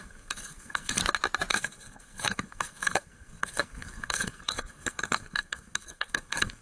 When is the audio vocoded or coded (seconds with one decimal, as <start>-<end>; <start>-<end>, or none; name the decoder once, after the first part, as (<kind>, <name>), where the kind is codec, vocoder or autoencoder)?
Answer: 0.0-1.0 (codec, SNAC); 1.5-6.6

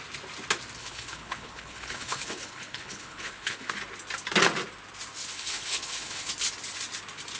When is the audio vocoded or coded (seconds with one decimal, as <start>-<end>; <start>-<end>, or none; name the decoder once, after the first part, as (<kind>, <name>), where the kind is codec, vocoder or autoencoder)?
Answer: 0.8-3.7 (codec, HILCodec); 5.2-6.3

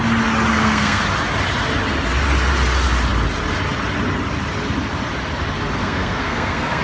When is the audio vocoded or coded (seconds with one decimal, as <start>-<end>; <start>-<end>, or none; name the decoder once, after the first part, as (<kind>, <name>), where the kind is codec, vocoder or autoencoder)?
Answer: 0.5-1.0 (codec, SNAC); 5.8-6.8

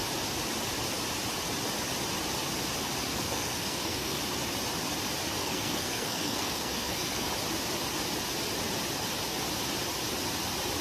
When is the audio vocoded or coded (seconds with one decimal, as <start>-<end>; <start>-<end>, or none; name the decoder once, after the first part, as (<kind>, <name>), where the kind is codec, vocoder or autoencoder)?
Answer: 3.1-4.2 (codec, SNAC); 5.4-7.3

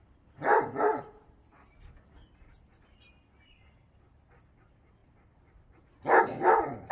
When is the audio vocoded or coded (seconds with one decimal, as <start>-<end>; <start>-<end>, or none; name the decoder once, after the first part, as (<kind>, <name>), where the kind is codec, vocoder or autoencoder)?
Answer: 0.0-0.6 (vocoder, BigVGAN v2)

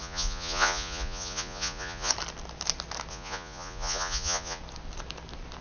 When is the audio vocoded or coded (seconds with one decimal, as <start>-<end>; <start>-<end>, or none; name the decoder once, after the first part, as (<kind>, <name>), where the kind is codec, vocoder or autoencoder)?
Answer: 0.0-2.1 (vocoder, Vocos); 3.1-4.6

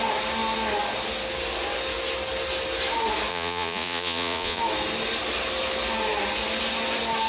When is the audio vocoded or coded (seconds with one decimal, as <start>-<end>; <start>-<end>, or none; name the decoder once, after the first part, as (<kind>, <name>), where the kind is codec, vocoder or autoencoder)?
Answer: 3.3-4.6 (vocoder, Vocos)